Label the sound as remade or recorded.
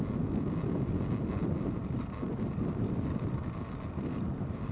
recorded